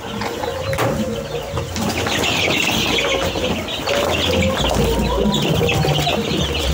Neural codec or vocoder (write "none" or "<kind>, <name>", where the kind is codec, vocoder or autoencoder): none